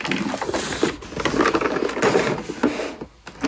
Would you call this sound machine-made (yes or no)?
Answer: no